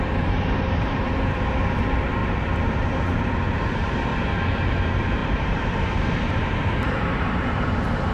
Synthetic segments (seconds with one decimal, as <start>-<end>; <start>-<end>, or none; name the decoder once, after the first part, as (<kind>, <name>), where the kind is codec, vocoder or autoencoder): 0.0-4.1 (vocoder, BigVGAN v2); 4.7-8.1